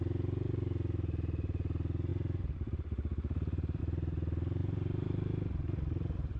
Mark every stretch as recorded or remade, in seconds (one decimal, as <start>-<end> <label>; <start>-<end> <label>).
0.0-2.1 recorded; 2.1-3.8 remade; 3.8-4.6 recorded; 4.6-5.1 remade; 5.1-6.4 recorded